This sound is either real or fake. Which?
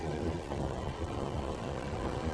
fake